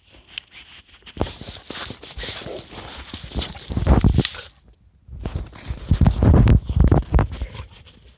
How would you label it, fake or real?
real